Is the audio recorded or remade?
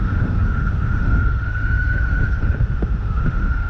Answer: remade